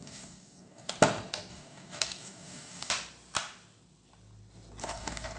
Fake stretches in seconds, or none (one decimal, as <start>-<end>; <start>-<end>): 0.0-0.9; 1.5-2.9; 4.8-5.4